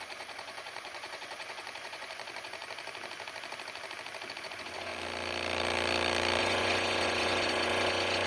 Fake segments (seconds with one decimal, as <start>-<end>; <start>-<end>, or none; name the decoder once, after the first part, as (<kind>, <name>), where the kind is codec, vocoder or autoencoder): 0.0-2.6 (vocoder, Vocos); 4.4-4.9; 6.4-8.3